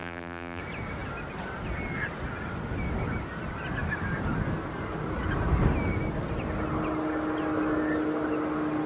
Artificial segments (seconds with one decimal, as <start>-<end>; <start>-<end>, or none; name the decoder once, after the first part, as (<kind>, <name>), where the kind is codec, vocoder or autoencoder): 0.0-0.6 (vocoder, BigVGAN v2)